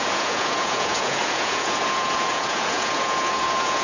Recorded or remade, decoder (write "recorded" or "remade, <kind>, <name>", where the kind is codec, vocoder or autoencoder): remade, vocoder, Vocos